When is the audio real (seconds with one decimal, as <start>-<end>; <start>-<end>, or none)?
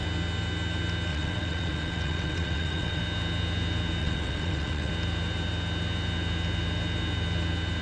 0.0-1.1; 3.0-4.0; 4.9-7.8